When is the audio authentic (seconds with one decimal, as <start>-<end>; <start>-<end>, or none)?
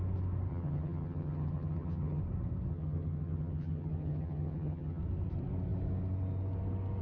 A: 0.0-0.5; 2.2-2.7; 5.0-7.0